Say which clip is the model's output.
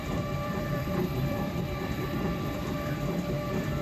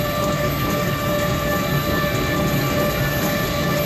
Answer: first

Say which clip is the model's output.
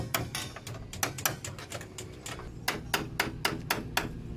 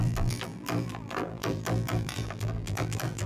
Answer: second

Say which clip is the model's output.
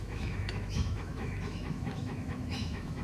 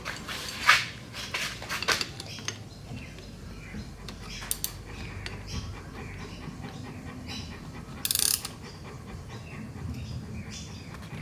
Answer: first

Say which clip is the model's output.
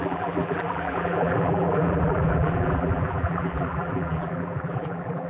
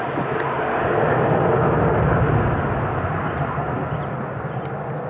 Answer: first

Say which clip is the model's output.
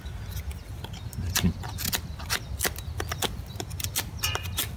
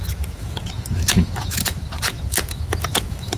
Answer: second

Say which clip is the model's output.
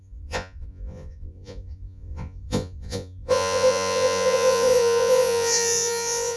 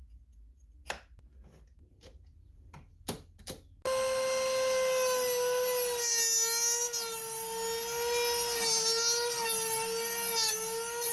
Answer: first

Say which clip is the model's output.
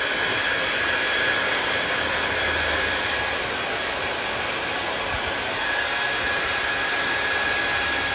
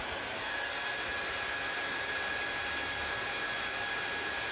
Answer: first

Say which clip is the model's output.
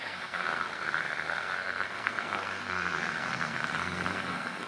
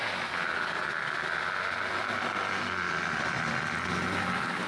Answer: first